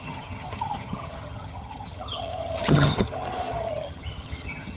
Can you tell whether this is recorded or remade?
remade